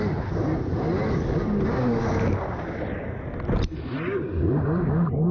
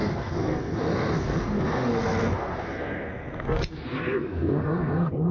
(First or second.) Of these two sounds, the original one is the first